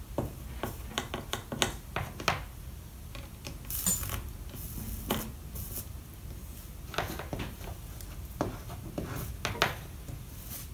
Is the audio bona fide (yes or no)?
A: yes